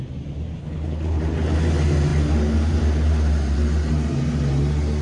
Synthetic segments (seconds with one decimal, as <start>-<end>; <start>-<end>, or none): 0.6-1.2